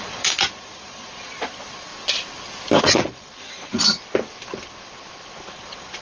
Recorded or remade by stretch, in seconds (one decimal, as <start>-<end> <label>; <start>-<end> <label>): 0.0-1.9 remade; 1.9-2.8 recorded; 2.8-3.7 remade; 3.7-5.5 recorded; 5.5-6.0 remade